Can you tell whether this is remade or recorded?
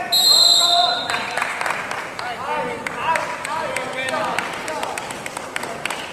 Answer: recorded